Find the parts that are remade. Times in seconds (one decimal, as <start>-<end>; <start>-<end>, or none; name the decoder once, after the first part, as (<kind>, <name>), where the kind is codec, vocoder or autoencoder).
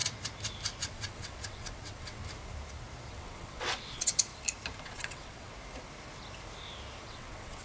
0.8-2.2 (vocoder, WaveNeXt); 3.1-4.3; 4.8-5.5; 7.0-7.6